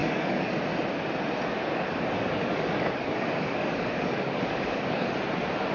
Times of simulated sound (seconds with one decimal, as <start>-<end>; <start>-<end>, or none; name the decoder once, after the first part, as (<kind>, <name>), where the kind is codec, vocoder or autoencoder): 0.0-0.6 (codec, DAC); 1.7-5.1

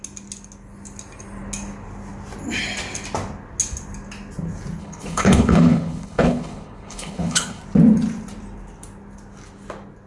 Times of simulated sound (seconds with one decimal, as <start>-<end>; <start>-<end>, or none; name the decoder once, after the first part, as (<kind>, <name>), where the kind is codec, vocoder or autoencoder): 4.8-7.6 (codec, HILCodec)

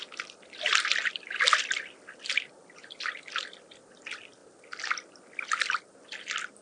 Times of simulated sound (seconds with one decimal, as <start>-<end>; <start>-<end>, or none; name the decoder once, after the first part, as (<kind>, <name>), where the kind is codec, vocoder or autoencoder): none

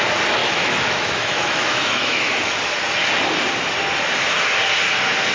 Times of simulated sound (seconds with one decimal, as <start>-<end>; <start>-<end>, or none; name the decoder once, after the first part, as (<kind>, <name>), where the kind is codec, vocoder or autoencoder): 0.4-2.6 (autoencoder, DAC-VAE)

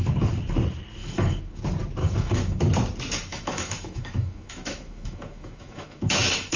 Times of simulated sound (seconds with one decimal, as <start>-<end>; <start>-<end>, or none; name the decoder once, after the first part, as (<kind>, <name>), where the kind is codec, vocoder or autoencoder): 1.0-1.6 (autoencoder, DAC-VAE); 2.0-2.6; 3.3-6.6

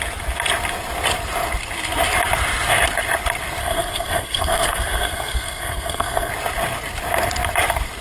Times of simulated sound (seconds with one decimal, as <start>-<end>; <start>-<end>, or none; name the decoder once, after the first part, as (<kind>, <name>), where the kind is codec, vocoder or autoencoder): 3.6-6.3 (codec, SNAC)

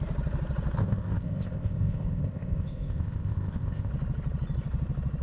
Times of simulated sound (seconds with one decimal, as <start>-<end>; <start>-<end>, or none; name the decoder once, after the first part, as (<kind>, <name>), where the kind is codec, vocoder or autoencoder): 0.8-3.9 (codec, ZipCodec)